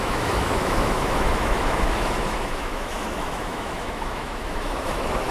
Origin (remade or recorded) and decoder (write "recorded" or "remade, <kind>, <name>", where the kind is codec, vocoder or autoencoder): remade, autoencoder, DAC-VAE